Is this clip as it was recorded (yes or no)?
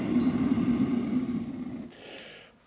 yes